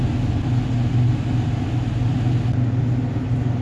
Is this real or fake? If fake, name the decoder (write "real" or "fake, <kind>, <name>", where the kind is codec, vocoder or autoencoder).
real